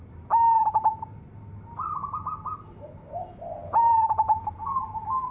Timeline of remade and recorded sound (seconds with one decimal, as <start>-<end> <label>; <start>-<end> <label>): 0.0-3.6 recorded; 3.6-4.5 remade; 4.5-5.3 recorded